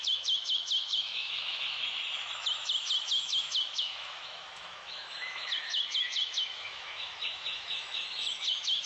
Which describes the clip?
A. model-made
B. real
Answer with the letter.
A